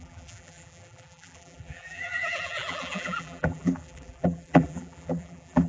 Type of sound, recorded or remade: remade